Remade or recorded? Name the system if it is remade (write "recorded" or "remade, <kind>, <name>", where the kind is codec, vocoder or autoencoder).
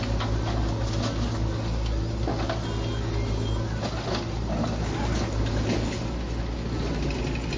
recorded